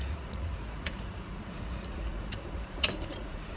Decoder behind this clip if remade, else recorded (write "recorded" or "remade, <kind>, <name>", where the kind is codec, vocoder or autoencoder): remade, vocoder, Vocos